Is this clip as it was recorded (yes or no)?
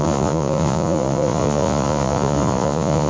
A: no